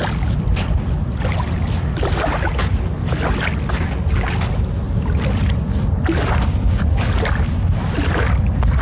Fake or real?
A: real